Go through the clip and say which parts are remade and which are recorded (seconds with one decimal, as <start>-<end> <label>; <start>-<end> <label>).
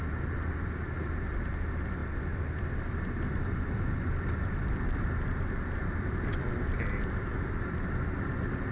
0.0-8.7 remade